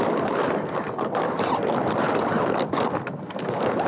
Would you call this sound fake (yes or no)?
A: no